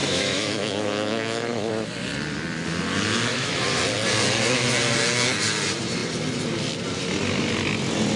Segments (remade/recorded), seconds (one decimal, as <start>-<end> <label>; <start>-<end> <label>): 0.0-1.7 remade; 1.7-3.3 recorded; 3.3-3.8 remade; 3.8-8.2 recorded